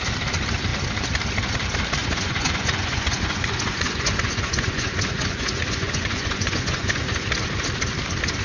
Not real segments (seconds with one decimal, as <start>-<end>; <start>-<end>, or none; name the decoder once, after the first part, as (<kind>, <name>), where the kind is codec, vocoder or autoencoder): 2.0-7.0 (vocoder, Vocos)